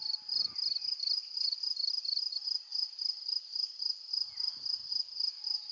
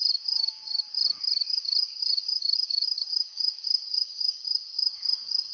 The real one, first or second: first